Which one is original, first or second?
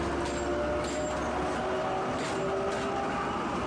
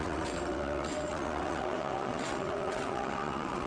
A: first